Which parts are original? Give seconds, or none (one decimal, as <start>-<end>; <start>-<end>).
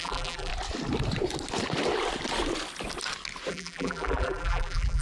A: 0.5-3.5